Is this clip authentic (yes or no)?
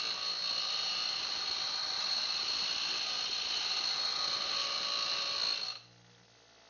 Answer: yes